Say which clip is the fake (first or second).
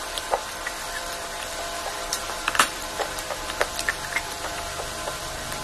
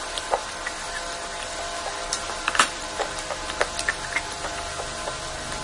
first